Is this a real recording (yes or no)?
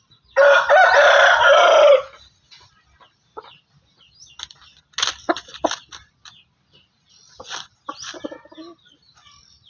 yes